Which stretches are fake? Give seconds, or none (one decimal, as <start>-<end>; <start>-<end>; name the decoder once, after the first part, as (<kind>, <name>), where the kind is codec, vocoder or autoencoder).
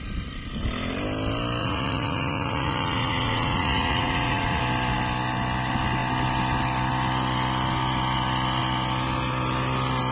1.6-4.6 (vocoder, Vocos)